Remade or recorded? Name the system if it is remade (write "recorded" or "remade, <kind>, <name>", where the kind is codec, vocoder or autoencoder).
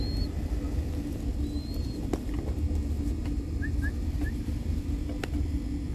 recorded